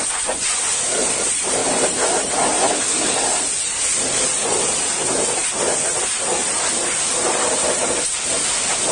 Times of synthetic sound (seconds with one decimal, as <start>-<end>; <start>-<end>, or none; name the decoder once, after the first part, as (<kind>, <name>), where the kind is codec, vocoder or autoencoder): 0.0-0.6 (vocoder, Vocos)

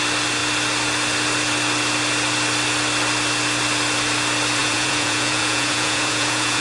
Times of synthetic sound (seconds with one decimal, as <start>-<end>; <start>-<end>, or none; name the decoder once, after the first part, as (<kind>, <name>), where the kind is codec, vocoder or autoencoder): 4.6-6.6 (vocoder, Vocos)

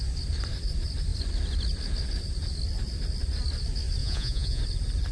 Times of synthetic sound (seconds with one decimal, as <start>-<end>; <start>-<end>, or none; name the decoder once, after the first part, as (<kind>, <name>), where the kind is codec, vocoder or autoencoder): 4.0-4.6 (vocoder, Vocos)

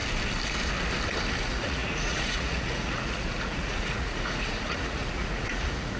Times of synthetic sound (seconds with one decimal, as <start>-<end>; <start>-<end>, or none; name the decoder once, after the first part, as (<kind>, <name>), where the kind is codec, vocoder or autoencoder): 1.4-6.0 (vocoder, Vocos)